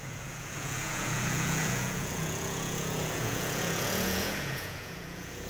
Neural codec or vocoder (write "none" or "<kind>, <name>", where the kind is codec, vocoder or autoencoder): vocoder, Vocos